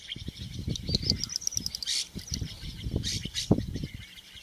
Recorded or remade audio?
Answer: recorded